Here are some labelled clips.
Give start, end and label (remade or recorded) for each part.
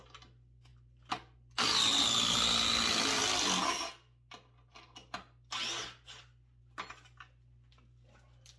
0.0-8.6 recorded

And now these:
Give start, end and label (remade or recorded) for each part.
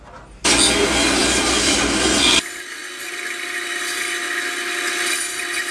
0.0-5.7 recorded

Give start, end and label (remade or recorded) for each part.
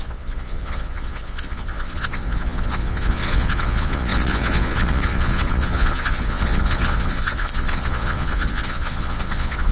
0.0-9.7 remade